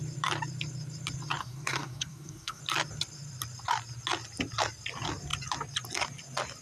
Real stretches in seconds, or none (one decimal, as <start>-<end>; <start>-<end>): 0.0-1.4; 2.6-6.6